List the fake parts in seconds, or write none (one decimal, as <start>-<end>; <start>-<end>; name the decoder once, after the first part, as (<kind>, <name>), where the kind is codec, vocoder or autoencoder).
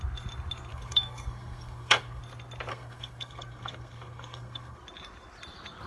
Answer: 0.7-2.2 (codec, SNAC); 2.7-4.8